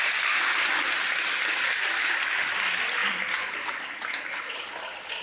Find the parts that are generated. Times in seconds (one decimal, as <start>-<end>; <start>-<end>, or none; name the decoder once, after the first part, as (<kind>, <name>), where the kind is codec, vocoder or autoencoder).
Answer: none